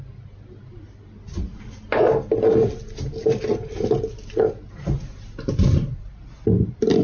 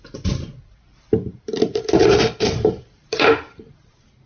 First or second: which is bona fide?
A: first